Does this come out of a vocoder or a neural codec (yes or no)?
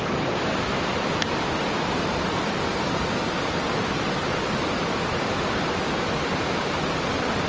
no